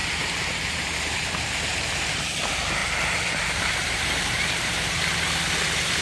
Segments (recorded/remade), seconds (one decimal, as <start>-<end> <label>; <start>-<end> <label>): 0.0-2.2 remade; 2.2-2.8 recorded; 2.8-5.0 remade; 5.0-6.0 recorded